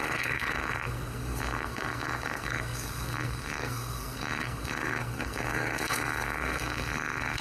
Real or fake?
fake